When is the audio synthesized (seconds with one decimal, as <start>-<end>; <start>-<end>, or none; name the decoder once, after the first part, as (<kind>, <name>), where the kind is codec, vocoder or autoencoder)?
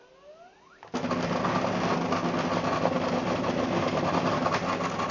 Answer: none